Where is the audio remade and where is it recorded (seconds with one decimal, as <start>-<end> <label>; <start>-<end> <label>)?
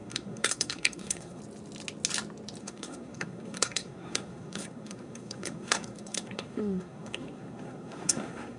0.0-1.4 remade; 1.4-2.6 recorded; 2.6-8.6 remade